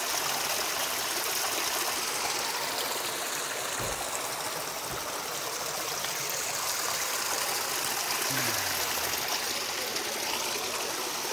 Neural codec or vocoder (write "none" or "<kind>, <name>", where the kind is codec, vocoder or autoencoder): none